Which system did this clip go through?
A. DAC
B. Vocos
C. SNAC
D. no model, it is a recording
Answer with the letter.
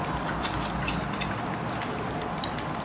D